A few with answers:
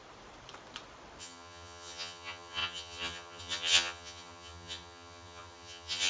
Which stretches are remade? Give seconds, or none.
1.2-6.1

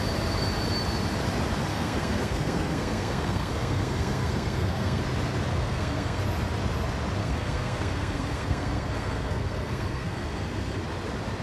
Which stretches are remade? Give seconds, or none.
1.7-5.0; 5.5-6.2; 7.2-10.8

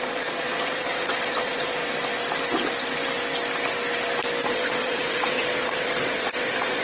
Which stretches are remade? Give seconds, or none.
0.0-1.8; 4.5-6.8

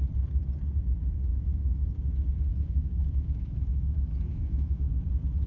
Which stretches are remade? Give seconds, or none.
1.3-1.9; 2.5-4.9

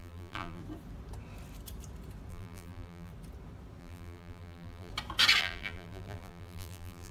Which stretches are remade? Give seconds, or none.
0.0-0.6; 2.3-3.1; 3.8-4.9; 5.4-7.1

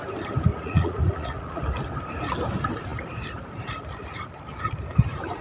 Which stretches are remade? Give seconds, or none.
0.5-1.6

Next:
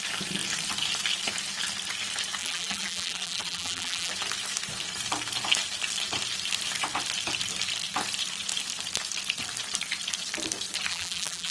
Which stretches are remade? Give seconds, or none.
2.4-4.1; 10.9-11.5

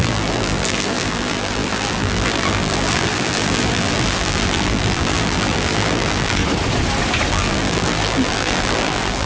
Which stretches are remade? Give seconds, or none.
0.0-6.4; 7.3-9.3